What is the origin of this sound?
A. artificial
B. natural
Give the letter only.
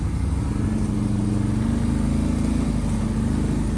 B